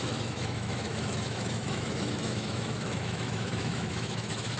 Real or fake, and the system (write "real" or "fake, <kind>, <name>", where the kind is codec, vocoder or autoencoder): fake, autoencoder, DAC-VAE